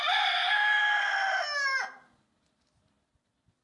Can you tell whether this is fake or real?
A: real